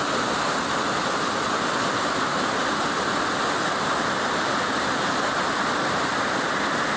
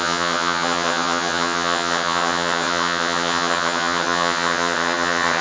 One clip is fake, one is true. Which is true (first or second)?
first